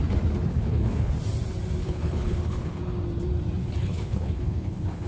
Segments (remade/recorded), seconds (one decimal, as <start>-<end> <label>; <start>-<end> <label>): 0.0-0.5 recorded; 0.5-1.1 remade; 1.1-1.8 recorded; 1.8-2.8 remade; 2.8-3.6 recorded; 3.6-5.1 remade